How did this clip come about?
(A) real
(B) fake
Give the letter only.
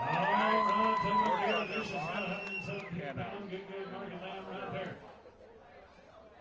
A